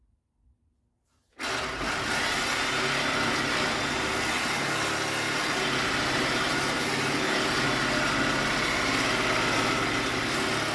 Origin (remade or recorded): recorded